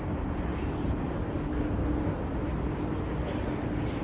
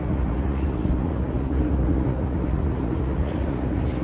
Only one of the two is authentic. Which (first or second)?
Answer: first